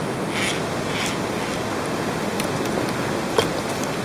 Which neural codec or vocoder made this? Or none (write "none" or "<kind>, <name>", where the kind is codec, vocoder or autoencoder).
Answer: none